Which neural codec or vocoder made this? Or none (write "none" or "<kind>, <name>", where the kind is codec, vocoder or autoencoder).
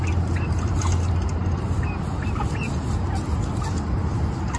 none